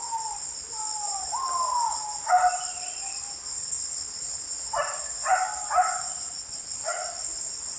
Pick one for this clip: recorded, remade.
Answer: recorded